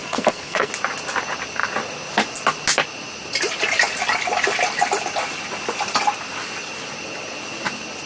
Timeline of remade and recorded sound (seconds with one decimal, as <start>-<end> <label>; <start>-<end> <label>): 0.0-0.7 remade; 0.7-8.1 recorded